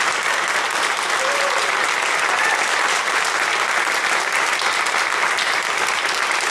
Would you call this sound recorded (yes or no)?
yes